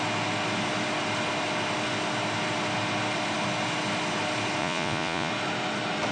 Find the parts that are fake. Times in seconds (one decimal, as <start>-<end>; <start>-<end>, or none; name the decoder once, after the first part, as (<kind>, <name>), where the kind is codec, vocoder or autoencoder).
4.6-5.3 (vocoder, Vocos)